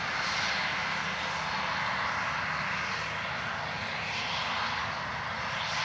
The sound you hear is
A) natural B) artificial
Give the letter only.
A